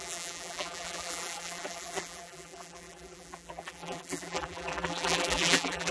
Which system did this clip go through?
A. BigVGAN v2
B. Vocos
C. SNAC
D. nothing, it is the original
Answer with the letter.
A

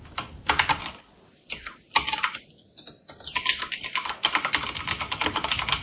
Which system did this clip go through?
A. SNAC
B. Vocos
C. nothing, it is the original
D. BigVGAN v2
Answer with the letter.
C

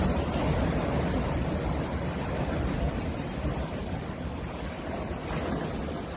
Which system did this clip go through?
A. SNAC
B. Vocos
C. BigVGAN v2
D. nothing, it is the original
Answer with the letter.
C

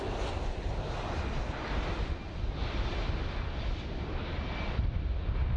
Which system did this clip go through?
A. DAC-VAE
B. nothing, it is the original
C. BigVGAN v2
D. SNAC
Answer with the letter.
B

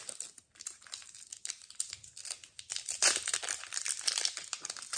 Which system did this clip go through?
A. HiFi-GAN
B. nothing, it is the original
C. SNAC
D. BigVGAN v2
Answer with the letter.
B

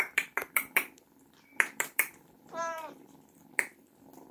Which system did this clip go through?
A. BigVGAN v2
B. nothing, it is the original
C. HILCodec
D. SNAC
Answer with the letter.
A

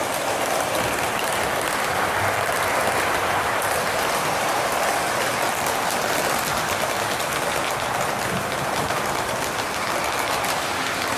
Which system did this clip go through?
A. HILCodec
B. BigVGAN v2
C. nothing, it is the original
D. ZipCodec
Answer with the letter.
B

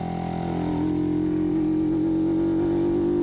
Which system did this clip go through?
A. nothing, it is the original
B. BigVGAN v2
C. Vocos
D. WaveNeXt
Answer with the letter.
A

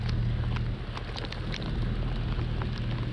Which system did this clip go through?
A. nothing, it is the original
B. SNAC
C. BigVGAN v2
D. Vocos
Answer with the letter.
A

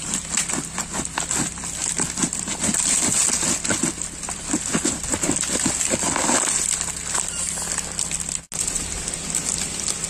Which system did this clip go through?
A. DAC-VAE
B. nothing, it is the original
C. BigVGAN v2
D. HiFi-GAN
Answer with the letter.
B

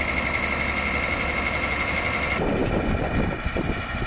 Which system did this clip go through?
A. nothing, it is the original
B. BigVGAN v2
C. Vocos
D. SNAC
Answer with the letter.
A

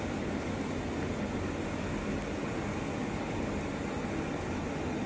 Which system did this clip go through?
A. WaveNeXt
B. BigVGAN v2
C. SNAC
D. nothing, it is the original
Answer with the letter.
D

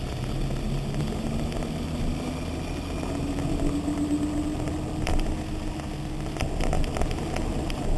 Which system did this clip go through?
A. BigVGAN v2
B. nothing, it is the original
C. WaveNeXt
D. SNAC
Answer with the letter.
B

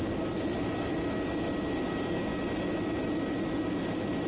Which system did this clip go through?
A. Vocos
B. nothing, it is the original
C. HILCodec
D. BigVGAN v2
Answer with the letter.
B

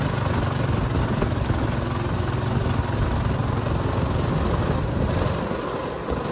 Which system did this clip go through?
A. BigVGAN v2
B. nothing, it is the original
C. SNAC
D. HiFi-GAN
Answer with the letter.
B